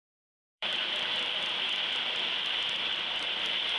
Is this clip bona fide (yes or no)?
no